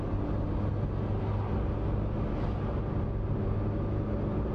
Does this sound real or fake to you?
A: real